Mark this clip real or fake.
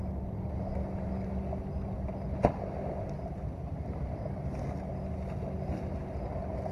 real